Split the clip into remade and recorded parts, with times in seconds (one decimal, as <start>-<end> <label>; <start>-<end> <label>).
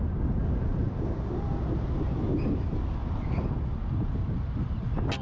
0.0-5.2 recorded